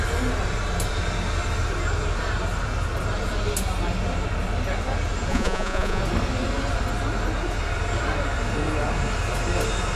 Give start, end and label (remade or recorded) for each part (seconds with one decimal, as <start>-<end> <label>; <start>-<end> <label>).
0.0-5.3 recorded; 5.3-6.0 remade; 6.0-10.0 recorded